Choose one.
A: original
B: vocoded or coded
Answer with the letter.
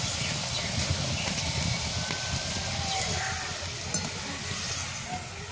A